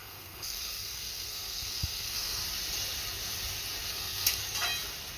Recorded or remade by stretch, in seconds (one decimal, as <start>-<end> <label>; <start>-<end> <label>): 0.0-2.4 remade; 2.4-3.9 recorded; 3.9-4.4 remade; 4.4-5.2 recorded